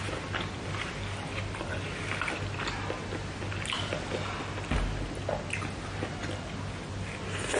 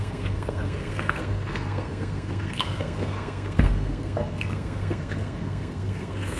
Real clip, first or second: first